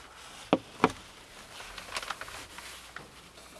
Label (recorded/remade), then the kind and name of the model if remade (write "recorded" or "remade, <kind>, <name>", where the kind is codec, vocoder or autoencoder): recorded